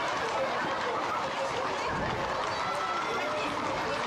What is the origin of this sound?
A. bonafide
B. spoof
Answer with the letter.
A